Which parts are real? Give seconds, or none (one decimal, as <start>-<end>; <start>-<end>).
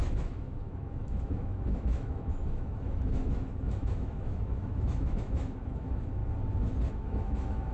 6.2-6.9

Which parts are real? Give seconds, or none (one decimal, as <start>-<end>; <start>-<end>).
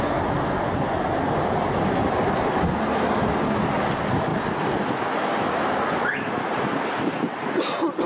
0.0-4.3; 6.3-8.1